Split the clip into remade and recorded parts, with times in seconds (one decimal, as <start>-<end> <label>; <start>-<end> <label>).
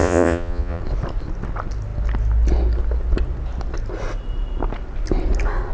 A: 0.0-0.8 remade; 0.8-5.7 recorded